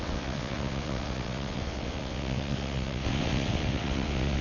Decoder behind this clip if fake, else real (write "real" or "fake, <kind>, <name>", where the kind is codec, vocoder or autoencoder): fake, vocoder, WaveNeXt